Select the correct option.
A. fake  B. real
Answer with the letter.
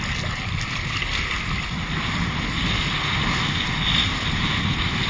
B